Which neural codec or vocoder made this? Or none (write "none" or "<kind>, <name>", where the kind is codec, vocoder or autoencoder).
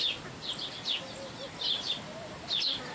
none